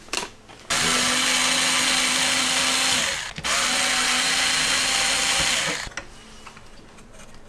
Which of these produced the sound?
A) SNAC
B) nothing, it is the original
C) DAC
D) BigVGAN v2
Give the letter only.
B